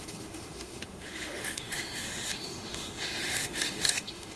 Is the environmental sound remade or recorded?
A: remade